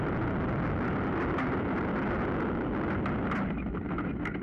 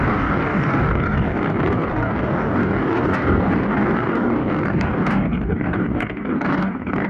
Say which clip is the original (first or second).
first